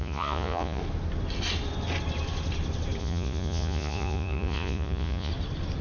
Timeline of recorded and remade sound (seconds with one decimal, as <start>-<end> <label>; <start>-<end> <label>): 0.0-0.8 remade; 0.8-3.0 recorded; 3.0-5.3 remade; 5.3-5.8 recorded